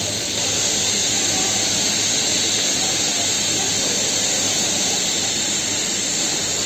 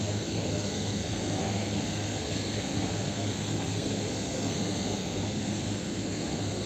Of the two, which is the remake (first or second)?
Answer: second